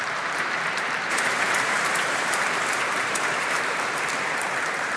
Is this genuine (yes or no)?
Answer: no